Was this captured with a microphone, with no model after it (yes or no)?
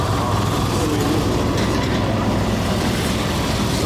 no